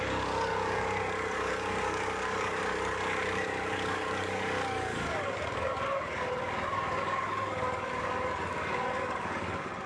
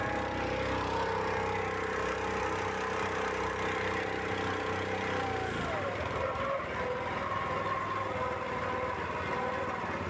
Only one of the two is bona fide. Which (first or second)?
second